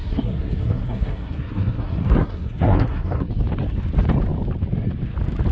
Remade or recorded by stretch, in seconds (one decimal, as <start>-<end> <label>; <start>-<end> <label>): 0.0-3.3 remade; 3.3-5.5 recorded